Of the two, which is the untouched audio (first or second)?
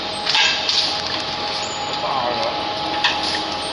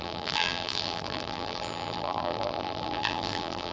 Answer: first